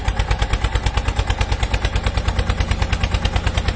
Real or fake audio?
real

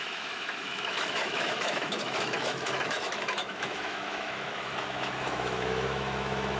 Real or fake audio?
fake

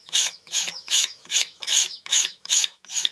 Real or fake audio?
fake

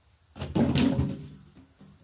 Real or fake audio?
real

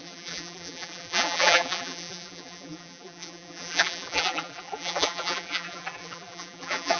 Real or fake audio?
fake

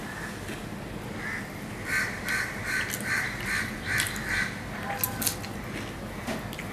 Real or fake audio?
real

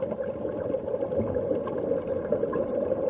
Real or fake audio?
real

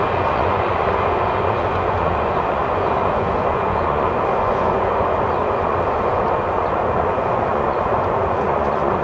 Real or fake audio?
fake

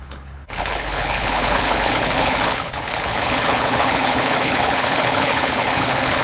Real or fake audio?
fake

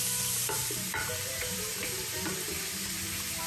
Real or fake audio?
fake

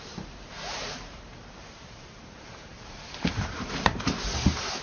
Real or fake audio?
fake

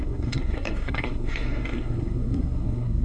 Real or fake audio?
fake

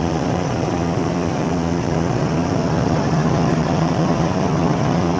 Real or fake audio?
fake